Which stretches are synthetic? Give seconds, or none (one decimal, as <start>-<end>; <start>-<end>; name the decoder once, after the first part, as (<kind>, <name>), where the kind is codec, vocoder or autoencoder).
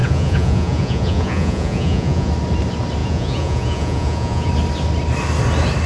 0.0-2.3 (vocoder, Vocos); 3.0-4.5